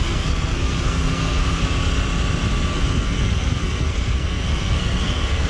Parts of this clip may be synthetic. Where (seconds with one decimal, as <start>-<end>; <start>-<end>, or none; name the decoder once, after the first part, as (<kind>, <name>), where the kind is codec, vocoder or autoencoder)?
0.0-1.6 (codec, SNAC); 2.7-5.5

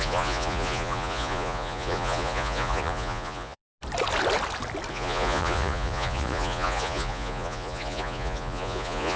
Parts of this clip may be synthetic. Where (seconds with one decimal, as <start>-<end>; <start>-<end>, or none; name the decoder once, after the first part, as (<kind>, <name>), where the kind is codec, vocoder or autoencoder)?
0.0-3.6 (vocoder, Vocos); 4.9-9.2

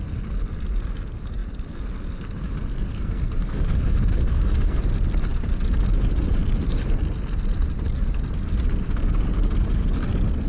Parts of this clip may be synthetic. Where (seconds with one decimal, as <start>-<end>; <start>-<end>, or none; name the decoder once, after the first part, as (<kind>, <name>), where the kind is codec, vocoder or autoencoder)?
2.9-4.8 (codec, SNAC)